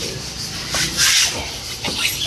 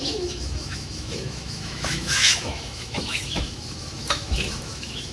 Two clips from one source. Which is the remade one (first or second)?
second